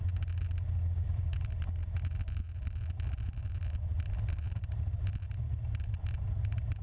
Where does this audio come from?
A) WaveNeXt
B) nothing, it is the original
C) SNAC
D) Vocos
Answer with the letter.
B